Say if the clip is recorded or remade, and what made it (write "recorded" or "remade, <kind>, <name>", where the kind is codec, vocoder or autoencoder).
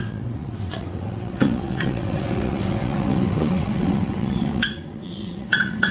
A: remade, vocoder, WaveNeXt